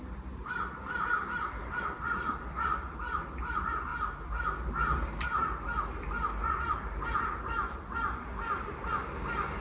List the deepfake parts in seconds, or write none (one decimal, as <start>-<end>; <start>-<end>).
none